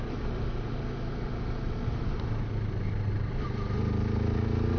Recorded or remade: recorded